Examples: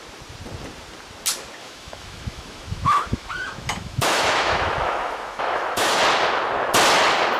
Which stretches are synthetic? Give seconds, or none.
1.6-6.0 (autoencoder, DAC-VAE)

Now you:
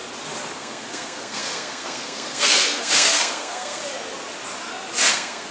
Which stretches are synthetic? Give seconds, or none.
0.5-3.8 (codec, SNAC); 5.1-5.5

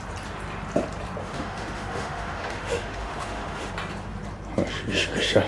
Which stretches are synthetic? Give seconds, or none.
1.2-3.7 (autoencoder, DAC-VAE)

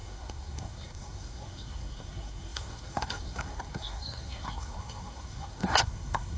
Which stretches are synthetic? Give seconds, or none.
0.0-6.4 (codec, SNAC)

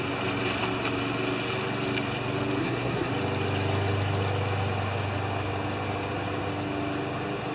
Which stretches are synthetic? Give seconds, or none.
2.6-3.1 (codec, SNAC)

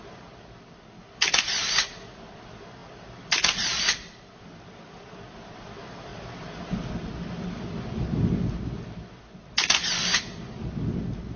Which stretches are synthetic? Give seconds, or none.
none

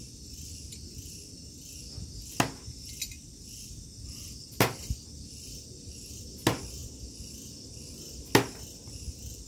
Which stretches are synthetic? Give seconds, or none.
none